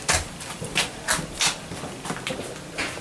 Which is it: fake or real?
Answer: real